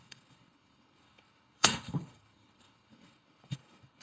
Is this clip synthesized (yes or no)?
yes